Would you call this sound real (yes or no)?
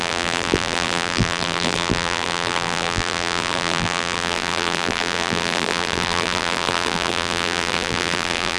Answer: no